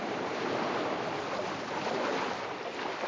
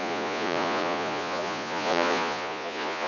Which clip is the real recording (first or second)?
first